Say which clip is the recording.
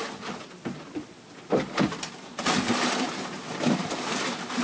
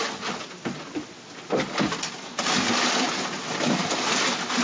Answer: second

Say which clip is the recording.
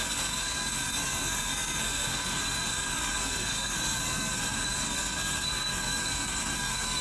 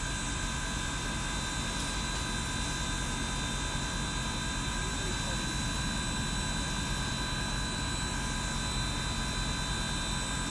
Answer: second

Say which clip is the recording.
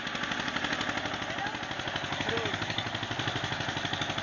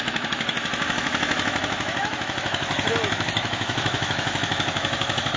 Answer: first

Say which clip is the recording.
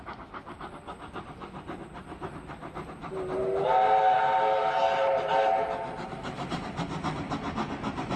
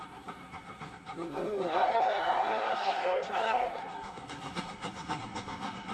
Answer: first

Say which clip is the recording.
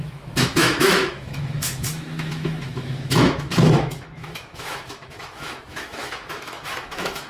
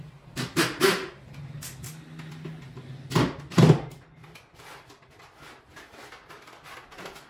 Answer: second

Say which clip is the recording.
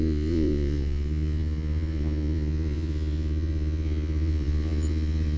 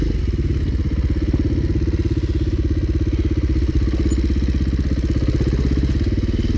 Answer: second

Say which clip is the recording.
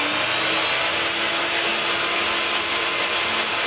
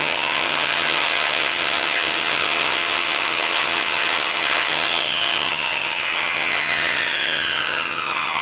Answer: first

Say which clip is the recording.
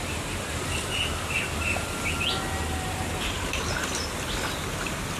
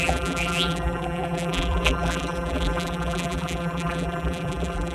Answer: first